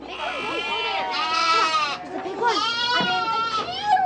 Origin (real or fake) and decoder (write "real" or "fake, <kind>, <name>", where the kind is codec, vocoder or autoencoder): real